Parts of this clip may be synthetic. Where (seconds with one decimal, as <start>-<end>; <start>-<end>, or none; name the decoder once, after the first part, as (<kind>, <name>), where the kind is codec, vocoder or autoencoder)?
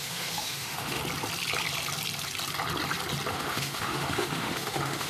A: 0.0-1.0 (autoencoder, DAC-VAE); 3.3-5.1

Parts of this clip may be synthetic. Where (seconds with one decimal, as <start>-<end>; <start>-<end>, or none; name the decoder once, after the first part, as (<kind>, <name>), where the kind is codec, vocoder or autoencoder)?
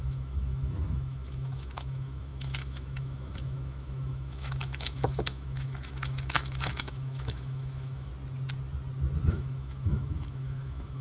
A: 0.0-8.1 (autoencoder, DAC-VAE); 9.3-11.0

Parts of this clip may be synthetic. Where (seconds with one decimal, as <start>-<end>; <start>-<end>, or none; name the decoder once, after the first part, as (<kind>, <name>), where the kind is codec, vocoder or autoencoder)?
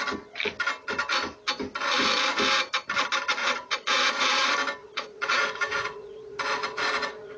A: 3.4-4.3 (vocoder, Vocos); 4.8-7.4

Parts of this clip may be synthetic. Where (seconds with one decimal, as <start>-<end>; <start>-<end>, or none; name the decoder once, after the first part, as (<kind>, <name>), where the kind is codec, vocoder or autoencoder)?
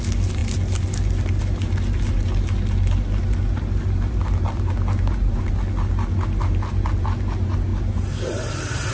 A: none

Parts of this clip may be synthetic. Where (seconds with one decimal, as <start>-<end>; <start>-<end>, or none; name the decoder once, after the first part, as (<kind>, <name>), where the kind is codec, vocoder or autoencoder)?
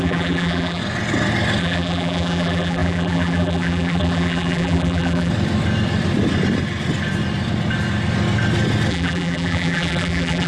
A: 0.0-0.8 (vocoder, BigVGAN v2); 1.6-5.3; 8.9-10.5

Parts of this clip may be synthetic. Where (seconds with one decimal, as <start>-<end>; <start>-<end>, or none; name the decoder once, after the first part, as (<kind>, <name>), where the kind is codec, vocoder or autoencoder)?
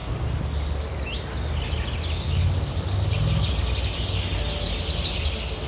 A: none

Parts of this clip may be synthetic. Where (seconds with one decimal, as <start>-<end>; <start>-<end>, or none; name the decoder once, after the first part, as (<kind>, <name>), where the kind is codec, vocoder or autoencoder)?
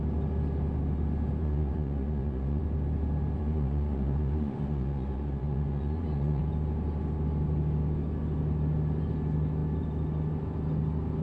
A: 1.4-2.6 (vocoder, Vocos); 3.4-6.4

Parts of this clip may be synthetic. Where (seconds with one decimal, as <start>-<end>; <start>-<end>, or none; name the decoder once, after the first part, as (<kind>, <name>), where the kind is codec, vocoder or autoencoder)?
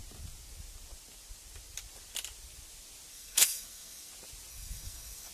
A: 3.1-4.1 (codec, SNAC); 4.5-5.3